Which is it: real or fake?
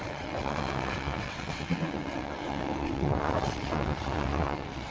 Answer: fake